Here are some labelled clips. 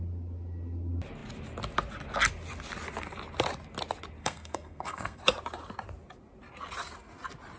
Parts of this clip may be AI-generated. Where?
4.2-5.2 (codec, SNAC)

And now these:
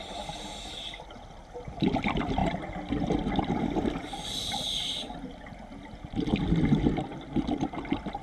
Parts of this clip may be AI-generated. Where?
none